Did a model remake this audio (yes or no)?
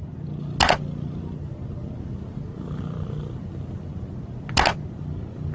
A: no